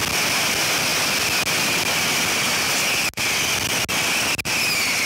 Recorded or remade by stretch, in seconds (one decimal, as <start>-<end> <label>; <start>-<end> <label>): 0.0-5.1 recorded